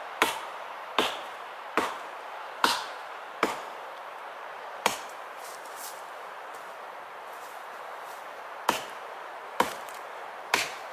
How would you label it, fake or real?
fake